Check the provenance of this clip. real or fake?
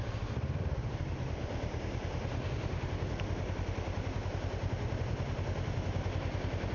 real